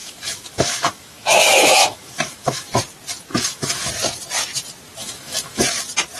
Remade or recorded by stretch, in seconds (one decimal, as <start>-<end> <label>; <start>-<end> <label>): 0.0-2.7 remade; 2.7-3.3 recorded; 3.3-3.9 remade; 3.9-5.0 recorded; 5.0-5.6 remade; 5.6-6.2 recorded